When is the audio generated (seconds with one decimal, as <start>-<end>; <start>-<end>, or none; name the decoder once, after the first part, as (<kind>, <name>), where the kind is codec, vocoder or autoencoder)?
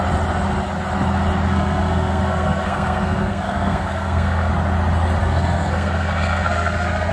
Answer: 1.5-4.5 (codec, SNAC); 5.2-7.1